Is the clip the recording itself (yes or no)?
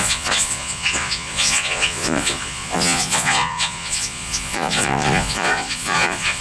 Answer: no